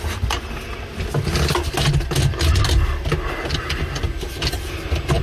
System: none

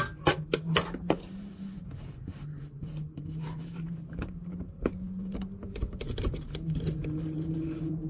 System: vocoder, BigVGAN v2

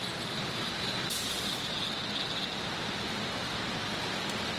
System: none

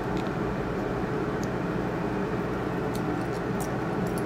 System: none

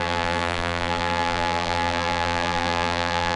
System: vocoder, BigVGAN v2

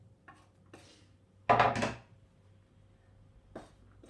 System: none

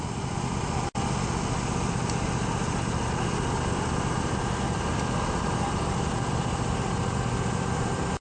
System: none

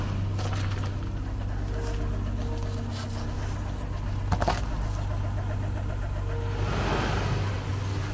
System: none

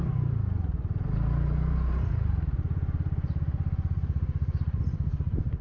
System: vocoder, BigVGAN v2